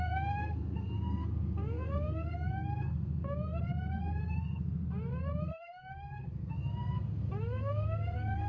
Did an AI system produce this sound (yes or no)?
yes